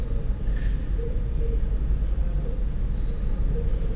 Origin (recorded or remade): recorded